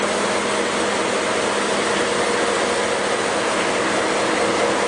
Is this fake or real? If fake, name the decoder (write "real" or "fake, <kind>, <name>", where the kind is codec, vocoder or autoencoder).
real